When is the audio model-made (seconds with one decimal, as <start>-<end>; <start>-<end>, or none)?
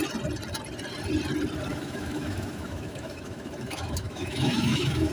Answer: 1.7-5.1